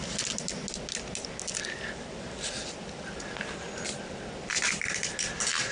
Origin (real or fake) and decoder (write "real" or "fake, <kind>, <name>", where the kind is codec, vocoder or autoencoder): real